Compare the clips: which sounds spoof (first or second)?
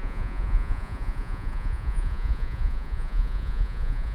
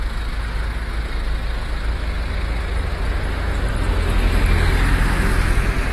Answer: first